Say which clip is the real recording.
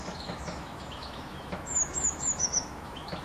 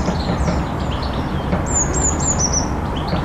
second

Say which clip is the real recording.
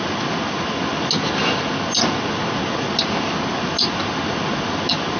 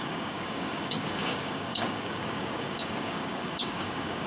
first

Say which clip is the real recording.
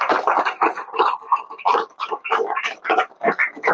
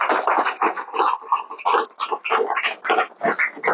second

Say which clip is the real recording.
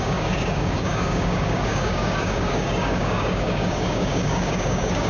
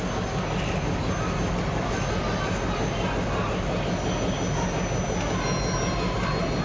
second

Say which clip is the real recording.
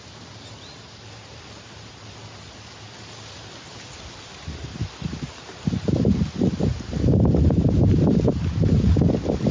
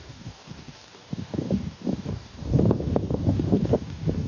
first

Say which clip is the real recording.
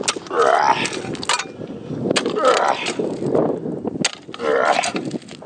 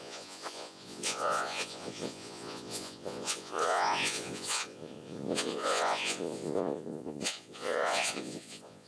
first